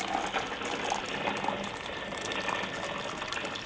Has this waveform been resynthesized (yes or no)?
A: no